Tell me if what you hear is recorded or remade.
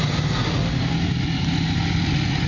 recorded